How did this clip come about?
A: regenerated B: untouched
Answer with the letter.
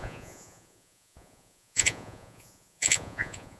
A